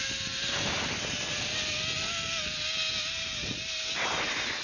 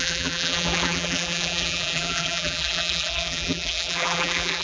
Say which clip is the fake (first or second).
second